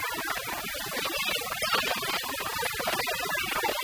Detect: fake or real real